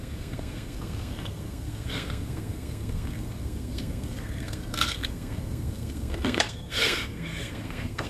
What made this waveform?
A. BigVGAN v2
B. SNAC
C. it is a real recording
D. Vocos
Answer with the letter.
B